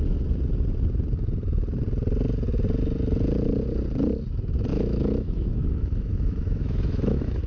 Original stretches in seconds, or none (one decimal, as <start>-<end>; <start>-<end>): 0.0-4.7